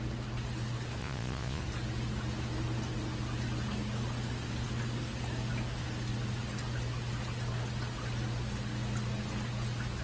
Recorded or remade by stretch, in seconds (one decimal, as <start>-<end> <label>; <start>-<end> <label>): 0.0-1.0 recorded; 1.0-1.6 remade; 1.6-10.0 recorded